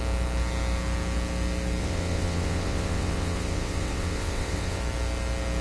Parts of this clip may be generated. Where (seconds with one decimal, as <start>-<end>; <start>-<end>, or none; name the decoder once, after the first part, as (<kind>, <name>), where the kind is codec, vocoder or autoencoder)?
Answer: 1.8-4.8 (vocoder, WaveNeXt)